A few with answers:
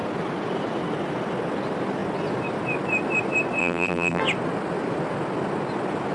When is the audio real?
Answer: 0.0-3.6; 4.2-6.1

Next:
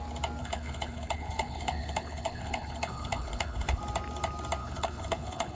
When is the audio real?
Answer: 0.0-0.4; 3.8-4.6

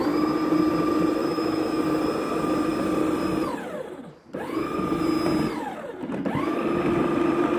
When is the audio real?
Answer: 0.0-1.2; 1.8-7.6

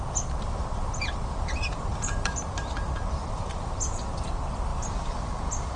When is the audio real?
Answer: 0.0-1.9; 2.5-5.8

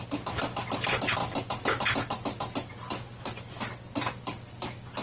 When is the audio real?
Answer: 0.0-5.0

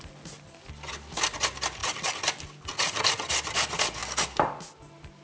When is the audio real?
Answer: 0.0-5.2

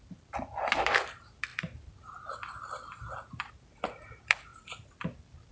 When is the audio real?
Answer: 0.0-1.5; 3.5-4.5

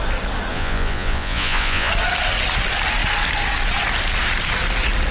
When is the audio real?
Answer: 0.0-0.5; 1.9-5.1